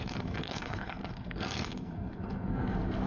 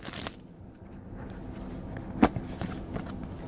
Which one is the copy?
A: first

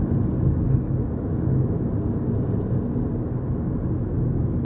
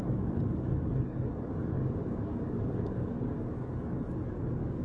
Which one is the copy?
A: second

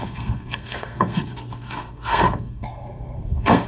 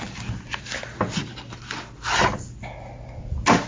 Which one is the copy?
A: first